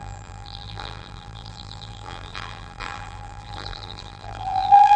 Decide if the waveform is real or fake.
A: fake